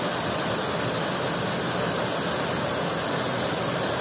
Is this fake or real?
real